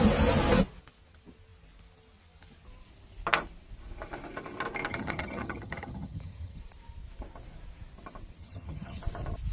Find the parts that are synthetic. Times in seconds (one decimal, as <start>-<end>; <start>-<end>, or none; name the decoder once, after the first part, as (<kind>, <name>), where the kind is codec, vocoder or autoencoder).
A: 4.9-6.6 (vocoder, HiFi-GAN); 8.4-9.0